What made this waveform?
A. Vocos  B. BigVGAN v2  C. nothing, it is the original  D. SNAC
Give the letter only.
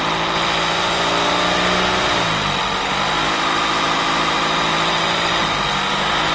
C